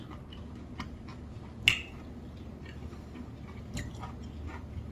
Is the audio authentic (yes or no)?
yes